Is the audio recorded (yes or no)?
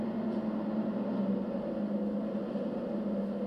yes